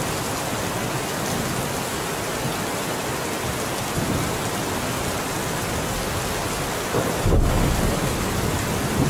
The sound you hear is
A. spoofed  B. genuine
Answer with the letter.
B